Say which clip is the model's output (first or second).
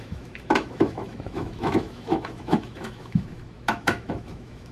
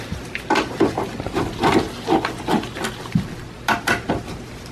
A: first